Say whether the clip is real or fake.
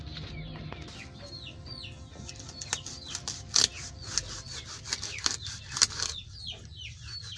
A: real